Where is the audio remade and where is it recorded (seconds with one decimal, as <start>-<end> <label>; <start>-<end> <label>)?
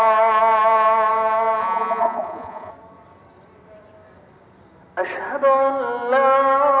0.0-1.6 recorded; 1.6-2.7 remade; 2.7-6.8 recorded